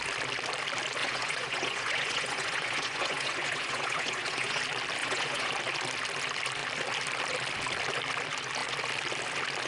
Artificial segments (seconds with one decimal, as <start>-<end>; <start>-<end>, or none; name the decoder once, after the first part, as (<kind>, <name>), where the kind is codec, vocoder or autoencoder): 1.0-4.6 (vocoder, Vocos); 5.0-5.5